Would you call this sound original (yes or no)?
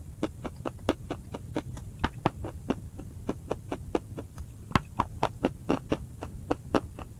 yes